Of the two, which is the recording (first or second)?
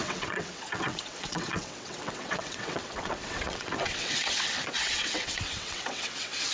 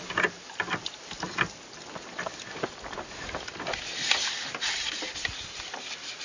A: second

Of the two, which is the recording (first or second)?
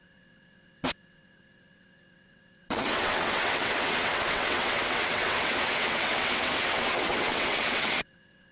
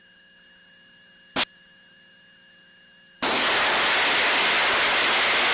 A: second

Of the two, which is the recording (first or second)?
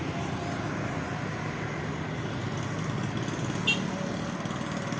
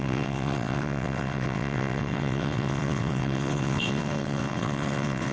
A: first